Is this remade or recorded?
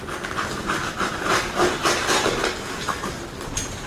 recorded